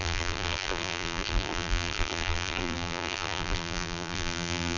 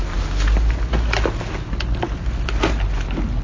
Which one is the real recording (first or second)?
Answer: second